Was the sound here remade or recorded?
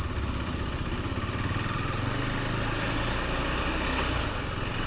recorded